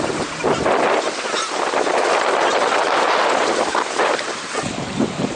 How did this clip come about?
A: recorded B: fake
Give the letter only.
A